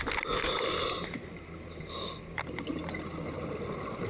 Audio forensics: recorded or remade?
recorded